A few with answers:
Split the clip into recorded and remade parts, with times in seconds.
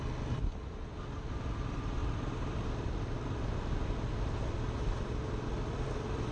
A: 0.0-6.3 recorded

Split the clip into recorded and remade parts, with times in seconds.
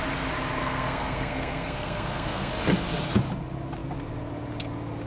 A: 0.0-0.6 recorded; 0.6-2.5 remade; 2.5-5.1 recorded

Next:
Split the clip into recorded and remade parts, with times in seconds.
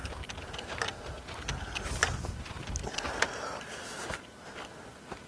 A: 0.0-5.3 recorded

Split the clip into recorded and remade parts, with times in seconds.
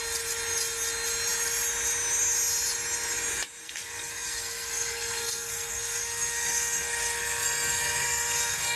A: 0.0-3.6 recorded; 3.6-8.8 remade